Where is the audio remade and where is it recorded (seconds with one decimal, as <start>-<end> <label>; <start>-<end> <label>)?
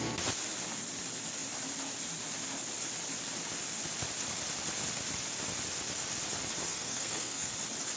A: 0.0-6.7 recorded; 6.7-7.5 remade; 7.5-8.0 recorded